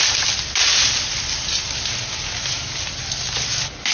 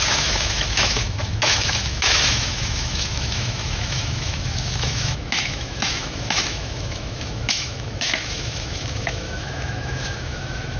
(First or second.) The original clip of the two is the first